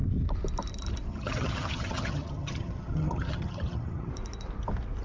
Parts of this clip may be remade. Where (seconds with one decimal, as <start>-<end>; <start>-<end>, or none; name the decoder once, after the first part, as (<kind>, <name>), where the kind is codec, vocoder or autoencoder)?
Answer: 1.1-4.1 (vocoder, HiFi-GAN)